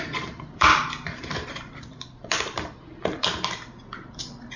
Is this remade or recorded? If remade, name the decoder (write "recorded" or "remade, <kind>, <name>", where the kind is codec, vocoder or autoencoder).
remade, vocoder, BigVGAN v2